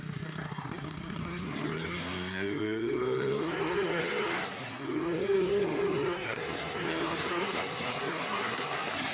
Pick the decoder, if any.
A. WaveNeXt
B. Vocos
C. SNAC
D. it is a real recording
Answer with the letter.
C